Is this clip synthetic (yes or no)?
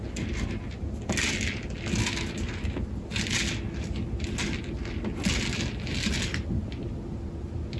no